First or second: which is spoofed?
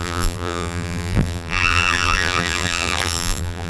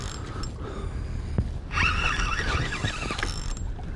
first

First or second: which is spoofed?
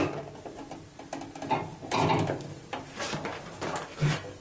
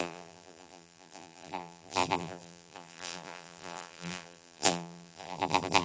second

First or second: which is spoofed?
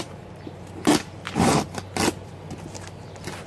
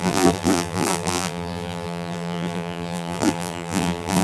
second